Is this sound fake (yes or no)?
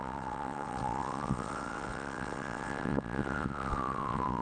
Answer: yes